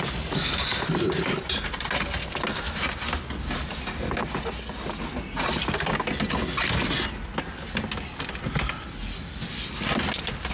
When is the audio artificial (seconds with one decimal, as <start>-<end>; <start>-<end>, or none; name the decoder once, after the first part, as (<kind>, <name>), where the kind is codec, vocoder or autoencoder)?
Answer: none